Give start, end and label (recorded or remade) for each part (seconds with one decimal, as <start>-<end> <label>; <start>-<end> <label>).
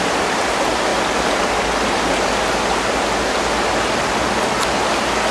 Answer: 0.0-5.3 recorded